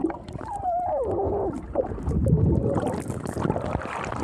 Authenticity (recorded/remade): recorded